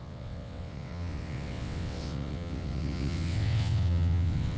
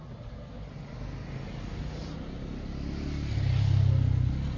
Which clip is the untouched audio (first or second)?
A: second